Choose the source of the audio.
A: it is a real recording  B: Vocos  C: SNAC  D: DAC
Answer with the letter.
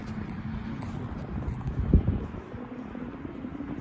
A